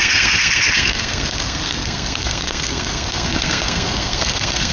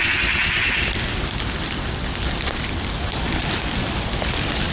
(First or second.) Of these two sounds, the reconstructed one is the first